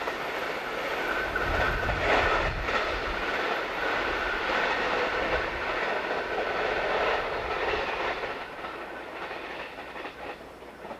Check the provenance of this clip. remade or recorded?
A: recorded